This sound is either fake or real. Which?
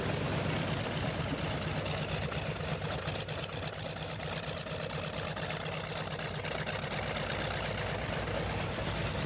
real